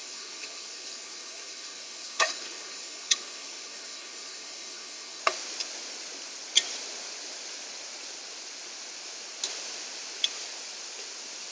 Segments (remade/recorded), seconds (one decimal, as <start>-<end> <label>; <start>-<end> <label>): 0.0-5.2 remade; 5.2-11.5 recorded

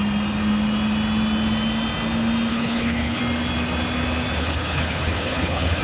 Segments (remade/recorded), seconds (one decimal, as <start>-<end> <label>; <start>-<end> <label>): 0.0-2.5 recorded; 2.5-3.2 remade; 3.2-4.4 recorded; 4.4-5.8 remade